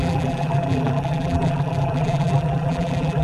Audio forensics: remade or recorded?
remade